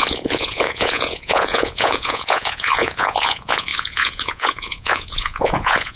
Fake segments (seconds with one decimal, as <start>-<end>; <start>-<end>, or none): 0.0-6.0